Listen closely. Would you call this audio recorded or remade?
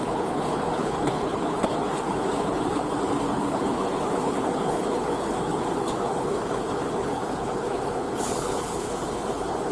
remade